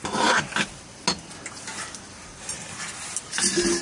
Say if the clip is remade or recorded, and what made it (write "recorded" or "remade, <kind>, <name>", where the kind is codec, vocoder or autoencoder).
recorded